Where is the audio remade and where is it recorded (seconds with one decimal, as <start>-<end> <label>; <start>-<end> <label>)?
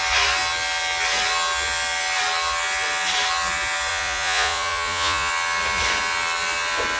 0.0-3.9 recorded; 3.9-5.3 remade; 5.3-7.0 recorded